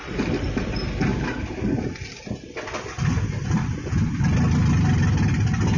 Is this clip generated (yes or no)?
no